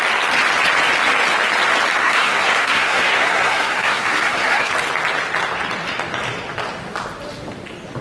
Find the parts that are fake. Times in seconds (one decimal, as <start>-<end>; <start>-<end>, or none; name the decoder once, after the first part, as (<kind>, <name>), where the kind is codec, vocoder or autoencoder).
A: 2.0-4.7 (codec, SNAC)